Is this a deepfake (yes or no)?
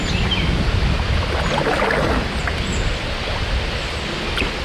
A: no